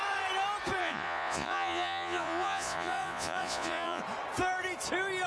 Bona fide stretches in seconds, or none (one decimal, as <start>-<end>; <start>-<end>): 0.0-0.8; 4.0-5.3